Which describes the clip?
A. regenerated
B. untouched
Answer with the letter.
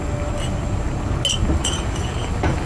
B